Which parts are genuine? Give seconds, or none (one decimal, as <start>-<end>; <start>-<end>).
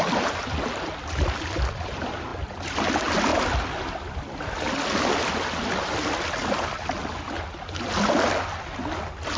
0.0-9.4